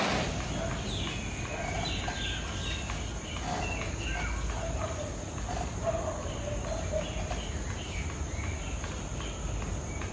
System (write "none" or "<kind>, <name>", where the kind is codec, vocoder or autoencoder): none